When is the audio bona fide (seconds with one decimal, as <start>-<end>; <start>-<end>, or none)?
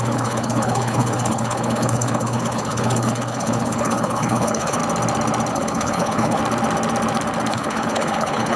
4.8-5.5; 6.4-7.5